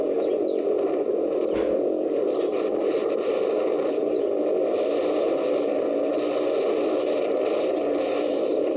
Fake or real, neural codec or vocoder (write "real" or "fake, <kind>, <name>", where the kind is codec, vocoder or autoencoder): real